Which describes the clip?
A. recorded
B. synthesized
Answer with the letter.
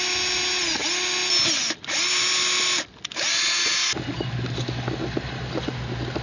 A